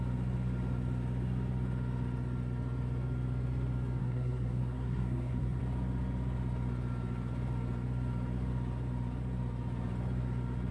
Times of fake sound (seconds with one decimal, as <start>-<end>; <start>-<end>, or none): 4.0-5.6